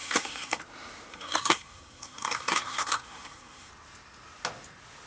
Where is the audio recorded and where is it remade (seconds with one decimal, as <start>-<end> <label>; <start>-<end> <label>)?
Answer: 0.0-0.6 remade; 0.6-1.1 recorded; 1.1-3.7 remade; 3.7-5.1 recorded